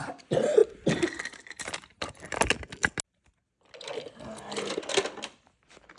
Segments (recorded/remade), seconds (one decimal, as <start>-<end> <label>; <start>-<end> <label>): 0.0-6.0 recorded